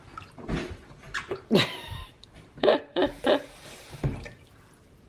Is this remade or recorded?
remade